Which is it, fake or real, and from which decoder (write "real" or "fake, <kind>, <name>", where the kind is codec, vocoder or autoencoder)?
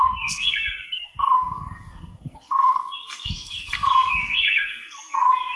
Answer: fake, codec, SNAC